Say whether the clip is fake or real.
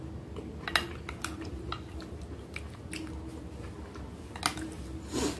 real